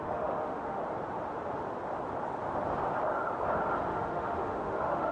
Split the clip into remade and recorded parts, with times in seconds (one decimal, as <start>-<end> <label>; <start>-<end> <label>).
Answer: 0.0-0.8 remade; 0.8-3.9 recorded; 3.9-5.1 remade